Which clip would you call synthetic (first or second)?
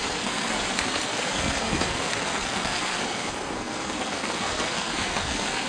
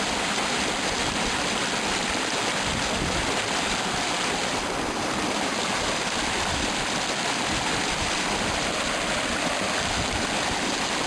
first